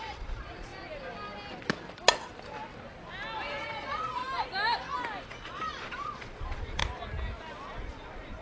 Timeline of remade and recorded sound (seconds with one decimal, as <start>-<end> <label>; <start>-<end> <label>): 0.0-0.7 remade; 0.7-3.6 recorded; 3.6-4.2 remade; 4.2-5.2 recorded; 5.2-6.8 remade; 6.8-7.8 recorded; 7.8-8.4 remade